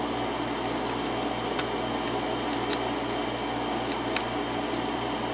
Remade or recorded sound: recorded